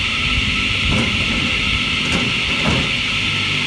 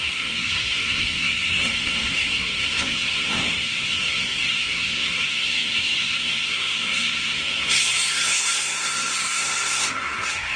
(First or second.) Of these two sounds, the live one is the first